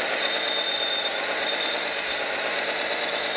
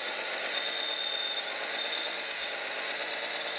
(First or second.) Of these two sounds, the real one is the second